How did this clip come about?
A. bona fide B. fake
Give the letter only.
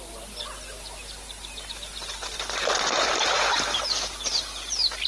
A